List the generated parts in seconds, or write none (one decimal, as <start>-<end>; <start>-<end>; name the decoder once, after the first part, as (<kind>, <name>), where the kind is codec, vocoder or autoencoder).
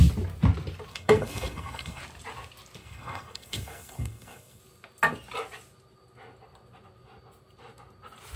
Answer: 0.9-2.0 (codec, SNAC); 2.8-4.6